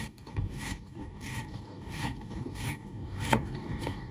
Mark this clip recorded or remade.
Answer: remade